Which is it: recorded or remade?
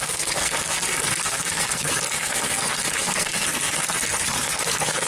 remade